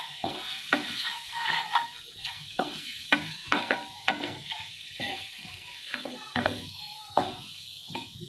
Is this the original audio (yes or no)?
no